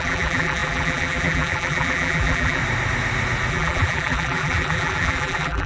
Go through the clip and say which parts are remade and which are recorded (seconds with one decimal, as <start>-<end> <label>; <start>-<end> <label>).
0.0-2.6 remade; 2.6-3.5 recorded; 3.5-5.7 remade